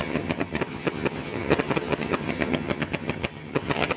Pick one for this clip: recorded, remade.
remade